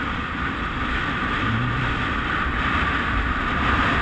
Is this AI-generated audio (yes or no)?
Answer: no